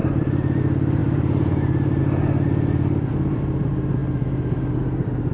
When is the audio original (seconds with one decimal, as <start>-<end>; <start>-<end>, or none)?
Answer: 0.6-1.0; 2.0-5.3